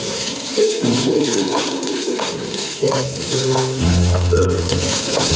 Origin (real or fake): fake